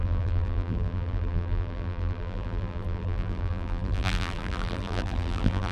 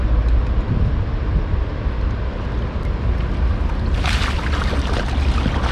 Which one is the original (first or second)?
second